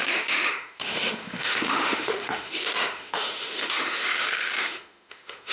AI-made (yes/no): yes